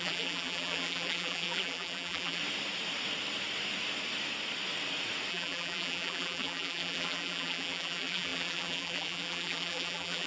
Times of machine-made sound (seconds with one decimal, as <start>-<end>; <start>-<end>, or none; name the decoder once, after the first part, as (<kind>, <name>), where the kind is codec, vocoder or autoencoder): 0.0-2.4 (vocoder, BigVGAN v2); 5.3-10.3